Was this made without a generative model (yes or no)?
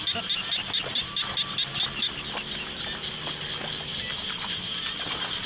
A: yes